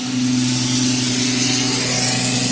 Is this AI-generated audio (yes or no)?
no